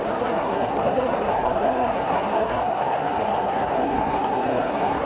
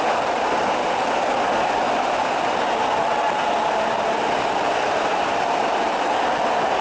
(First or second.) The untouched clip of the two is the second